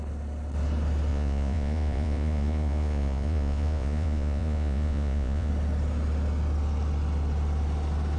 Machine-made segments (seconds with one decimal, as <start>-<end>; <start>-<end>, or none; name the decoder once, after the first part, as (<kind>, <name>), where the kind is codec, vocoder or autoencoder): 1.1-5.5 (vocoder, Vocos)